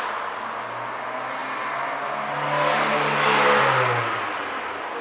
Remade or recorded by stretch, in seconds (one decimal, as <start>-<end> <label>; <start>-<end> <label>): 0.0-5.0 recorded